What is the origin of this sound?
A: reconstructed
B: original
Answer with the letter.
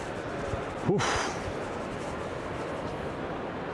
B